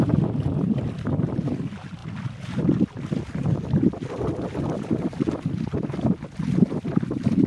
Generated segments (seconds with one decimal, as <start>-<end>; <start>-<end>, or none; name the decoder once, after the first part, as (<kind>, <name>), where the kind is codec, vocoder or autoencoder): none